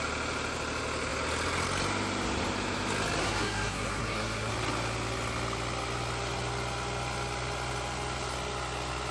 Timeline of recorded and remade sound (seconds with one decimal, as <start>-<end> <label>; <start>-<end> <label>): 0.0-3.2 recorded; 3.2-4.5 remade; 4.5-9.1 recorded